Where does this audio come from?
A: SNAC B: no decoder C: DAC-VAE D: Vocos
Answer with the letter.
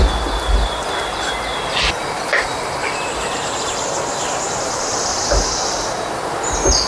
B